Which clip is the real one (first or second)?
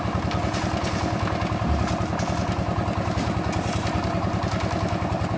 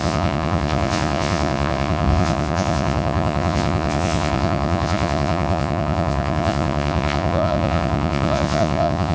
first